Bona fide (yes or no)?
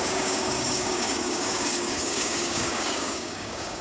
no